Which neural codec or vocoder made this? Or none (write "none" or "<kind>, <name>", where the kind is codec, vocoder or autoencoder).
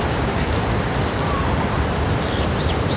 vocoder, BigVGAN v2